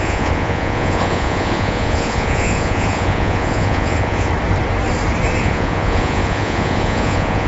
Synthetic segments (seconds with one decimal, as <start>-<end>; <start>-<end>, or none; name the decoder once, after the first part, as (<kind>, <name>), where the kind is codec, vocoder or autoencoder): 0.0-4.3 (vocoder, Vocos); 5.4-7.5